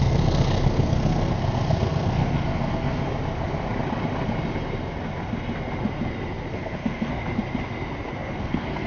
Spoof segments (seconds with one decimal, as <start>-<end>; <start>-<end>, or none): 0.0-3.0; 6.5-7.2; 8.4-8.9